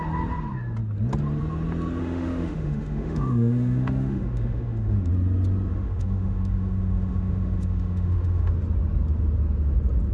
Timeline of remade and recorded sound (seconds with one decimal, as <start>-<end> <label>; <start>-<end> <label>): 0.0-2.0 recorded; 2.0-5.1 remade; 5.1-5.7 recorded; 5.7-8.5 remade; 8.5-10.1 recorded